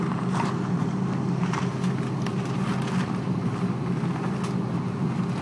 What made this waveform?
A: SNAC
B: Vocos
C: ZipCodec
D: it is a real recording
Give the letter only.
D